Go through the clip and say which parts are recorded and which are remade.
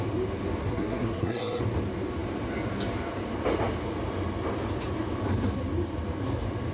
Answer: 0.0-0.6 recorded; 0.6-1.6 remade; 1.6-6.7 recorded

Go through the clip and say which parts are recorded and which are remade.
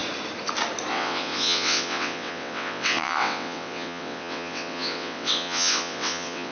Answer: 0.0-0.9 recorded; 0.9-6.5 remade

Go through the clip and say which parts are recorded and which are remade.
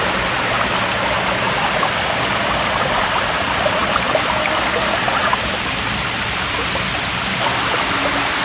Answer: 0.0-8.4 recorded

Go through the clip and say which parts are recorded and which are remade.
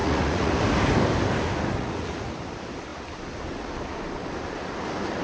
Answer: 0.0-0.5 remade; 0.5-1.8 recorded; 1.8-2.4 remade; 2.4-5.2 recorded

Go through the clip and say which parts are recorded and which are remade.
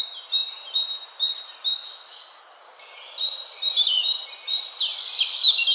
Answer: 0.0-1.8 recorded; 1.8-2.4 remade; 2.4-5.7 recorded